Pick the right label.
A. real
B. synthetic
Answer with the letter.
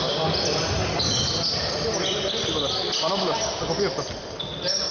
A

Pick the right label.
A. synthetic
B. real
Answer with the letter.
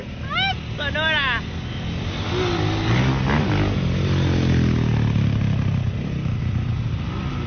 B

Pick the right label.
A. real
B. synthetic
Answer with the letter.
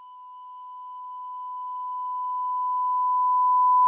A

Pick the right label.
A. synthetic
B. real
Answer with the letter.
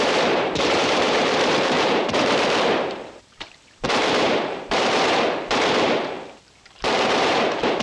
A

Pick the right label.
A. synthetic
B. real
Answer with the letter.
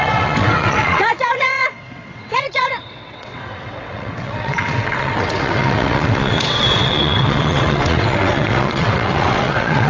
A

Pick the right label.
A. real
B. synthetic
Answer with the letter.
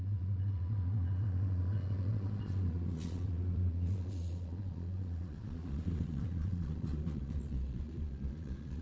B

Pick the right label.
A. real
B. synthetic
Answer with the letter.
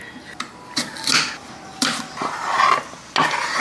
A